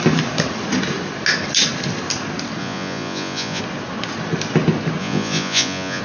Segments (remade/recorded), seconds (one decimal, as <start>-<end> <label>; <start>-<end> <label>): 0.0-2.6 recorded; 2.6-3.6 remade; 3.6-5.0 recorded; 5.0-6.0 remade